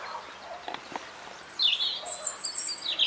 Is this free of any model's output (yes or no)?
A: yes